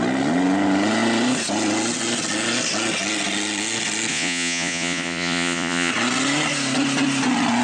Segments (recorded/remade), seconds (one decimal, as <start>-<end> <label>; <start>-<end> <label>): 0.0-4.1 recorded; 4.1-5.9 remade; 5.9-7.6 recorded